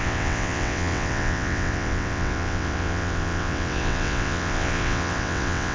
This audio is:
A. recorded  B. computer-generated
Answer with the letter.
B